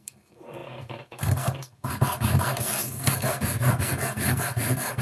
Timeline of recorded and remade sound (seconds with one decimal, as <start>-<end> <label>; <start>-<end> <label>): 0.0-5.0 remade